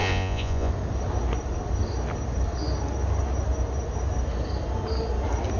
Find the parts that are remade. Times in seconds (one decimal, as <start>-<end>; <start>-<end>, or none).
0.0-0.7